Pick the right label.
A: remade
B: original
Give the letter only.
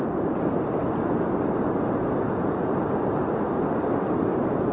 B